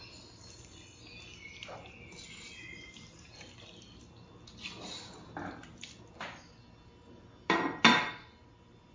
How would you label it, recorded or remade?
recorded